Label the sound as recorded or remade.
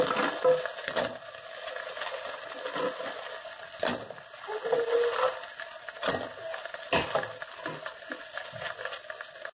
recorded